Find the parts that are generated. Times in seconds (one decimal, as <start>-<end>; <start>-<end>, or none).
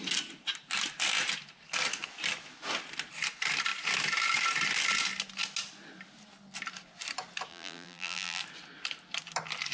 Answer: 7.5-8.4